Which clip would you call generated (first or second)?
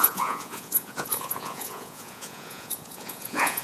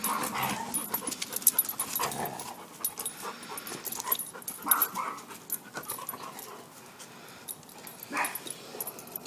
first